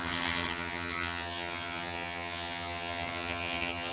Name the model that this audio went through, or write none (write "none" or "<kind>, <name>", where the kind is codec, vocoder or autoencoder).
vocoder, HiFi-GAN